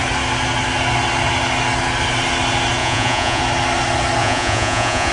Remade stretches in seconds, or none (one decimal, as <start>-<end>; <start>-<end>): 2.8-3.4; 4.2-5.1